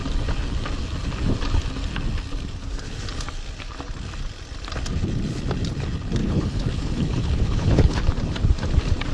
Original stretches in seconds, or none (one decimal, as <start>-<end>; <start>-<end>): 0.0-6.2; 8.0-9.1